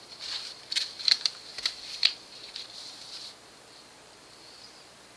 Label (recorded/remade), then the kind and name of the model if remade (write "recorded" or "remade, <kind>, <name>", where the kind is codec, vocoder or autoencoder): remade, vocoder, BigVGAN v2